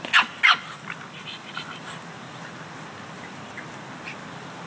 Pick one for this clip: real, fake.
real